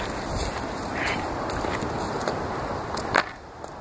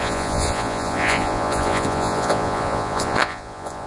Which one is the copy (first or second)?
second